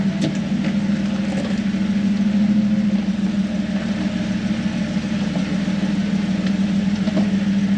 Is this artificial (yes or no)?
no